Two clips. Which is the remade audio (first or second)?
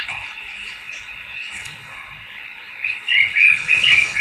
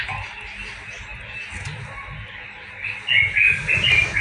first